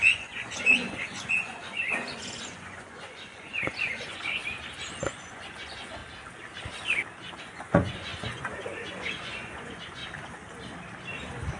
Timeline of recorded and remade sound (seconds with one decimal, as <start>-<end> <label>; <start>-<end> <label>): 0.0-4.4 remade; 4.4-5.0 recorded; 5.0-6.0 remade; 6.0-7.4 recorded; 7.4-10.0 remade; 10.0-11.6 recorded